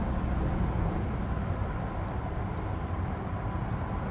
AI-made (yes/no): no